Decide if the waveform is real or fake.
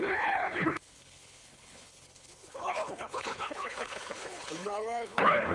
fake